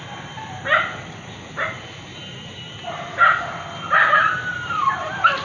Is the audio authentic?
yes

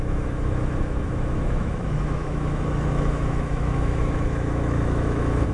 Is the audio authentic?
no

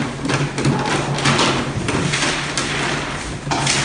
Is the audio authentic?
yes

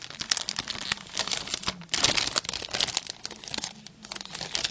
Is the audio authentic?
yes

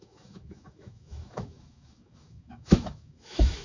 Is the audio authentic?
no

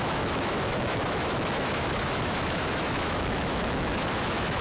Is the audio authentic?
no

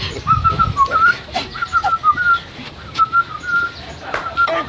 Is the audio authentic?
yes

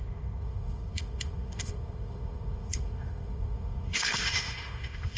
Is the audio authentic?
no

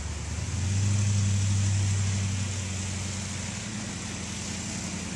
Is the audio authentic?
yes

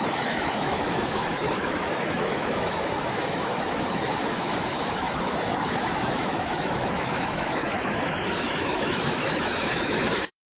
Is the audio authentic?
no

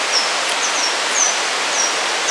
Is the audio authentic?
yes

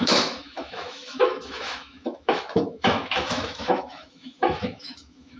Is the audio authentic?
no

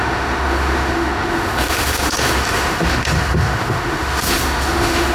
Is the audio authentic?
no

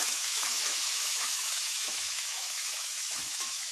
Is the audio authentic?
no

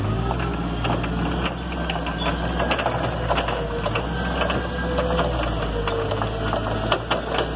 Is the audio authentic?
yes